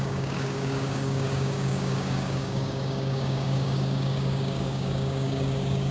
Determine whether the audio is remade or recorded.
remade